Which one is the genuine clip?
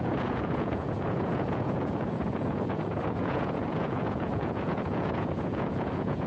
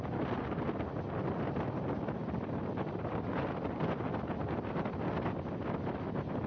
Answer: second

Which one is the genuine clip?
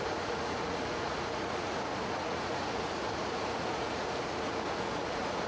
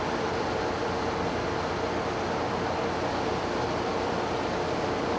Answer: second